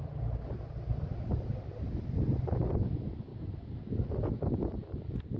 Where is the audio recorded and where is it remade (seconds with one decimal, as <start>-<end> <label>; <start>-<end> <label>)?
0.0-5.4 recorded